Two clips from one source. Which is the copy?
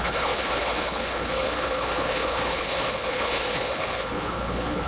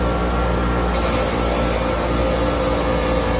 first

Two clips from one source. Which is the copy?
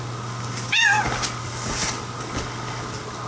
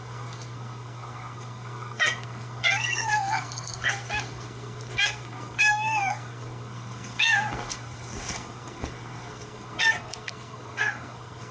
second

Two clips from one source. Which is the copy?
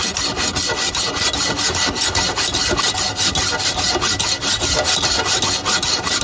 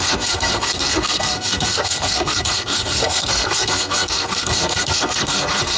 second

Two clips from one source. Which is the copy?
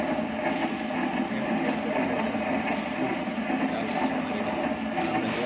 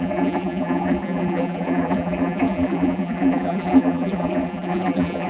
second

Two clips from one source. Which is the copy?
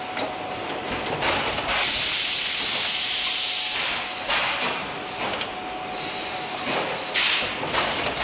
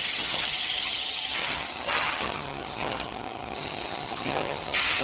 second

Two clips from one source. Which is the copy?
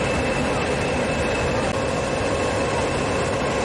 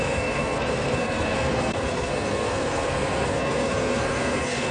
second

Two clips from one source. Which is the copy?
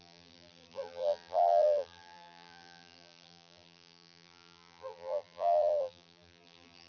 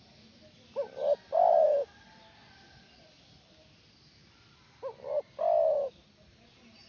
first